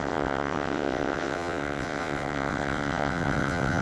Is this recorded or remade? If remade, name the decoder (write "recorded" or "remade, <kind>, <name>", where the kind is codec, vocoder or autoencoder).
remade, vocoder, WaveNeXt